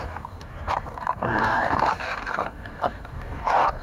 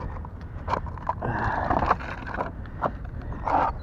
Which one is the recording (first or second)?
second